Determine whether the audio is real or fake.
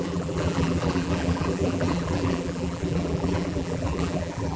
fake